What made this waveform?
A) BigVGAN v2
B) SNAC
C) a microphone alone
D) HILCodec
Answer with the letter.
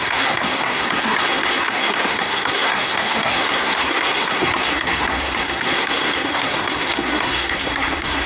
B